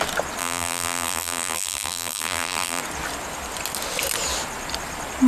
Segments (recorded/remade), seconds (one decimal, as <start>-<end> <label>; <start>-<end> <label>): 0.0-0.4 recorded; 0.4-2.8 remade; 2.8-5.3 recorded